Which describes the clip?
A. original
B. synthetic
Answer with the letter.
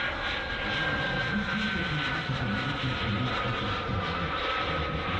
A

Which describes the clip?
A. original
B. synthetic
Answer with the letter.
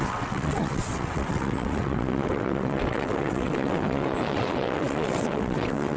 B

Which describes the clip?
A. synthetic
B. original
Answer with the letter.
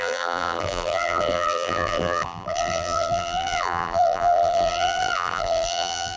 A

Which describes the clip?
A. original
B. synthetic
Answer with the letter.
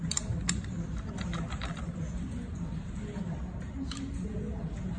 A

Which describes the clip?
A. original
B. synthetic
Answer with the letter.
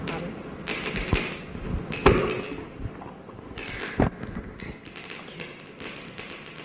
A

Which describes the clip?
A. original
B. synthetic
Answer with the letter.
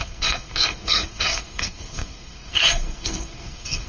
B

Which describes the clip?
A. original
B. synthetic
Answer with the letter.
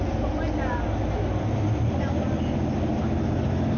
A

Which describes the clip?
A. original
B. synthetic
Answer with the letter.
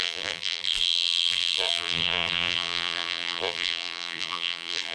B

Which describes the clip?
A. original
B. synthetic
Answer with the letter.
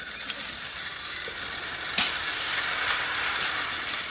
A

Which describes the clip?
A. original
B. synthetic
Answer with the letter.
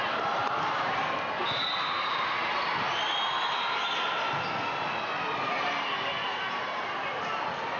A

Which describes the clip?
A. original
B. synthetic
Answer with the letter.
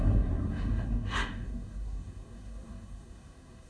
B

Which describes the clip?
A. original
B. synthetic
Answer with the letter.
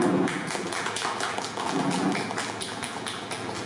B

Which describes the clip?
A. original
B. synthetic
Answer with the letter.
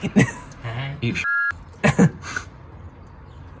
A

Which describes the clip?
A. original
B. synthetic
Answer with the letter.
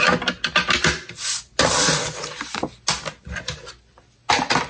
A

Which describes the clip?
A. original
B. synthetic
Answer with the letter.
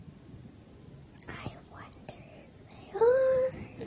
B